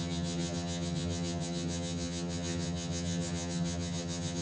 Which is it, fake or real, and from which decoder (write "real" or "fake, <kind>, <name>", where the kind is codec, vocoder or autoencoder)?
fake, vocoder, HiFi-GAN